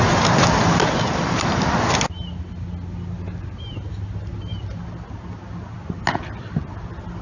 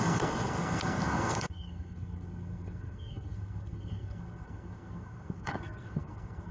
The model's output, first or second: second